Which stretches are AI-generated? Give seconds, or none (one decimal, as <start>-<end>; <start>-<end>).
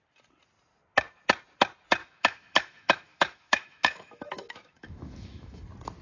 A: 2.0-5.6